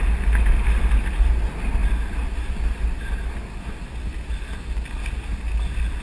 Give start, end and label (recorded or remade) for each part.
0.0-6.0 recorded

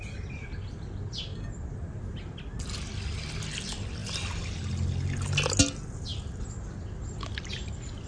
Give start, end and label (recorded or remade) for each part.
0.0-8.1 recorded